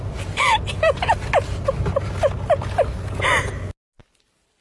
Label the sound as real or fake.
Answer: real